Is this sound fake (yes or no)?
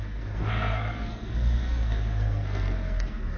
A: yes